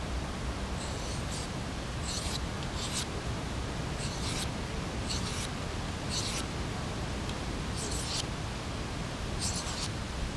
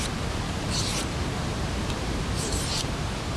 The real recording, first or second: first